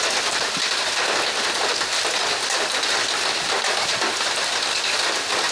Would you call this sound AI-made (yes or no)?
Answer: no